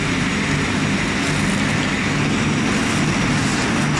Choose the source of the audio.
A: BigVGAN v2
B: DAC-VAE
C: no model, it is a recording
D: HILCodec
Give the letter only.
C